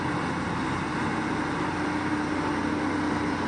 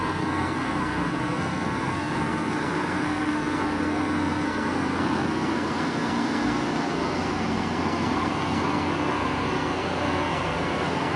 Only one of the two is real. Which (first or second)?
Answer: first